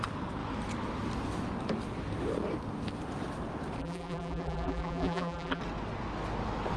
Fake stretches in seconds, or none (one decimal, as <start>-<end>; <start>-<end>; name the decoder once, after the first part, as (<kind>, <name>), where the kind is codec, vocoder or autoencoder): 3.8-5.6 (vocoder, BigVGAN v2)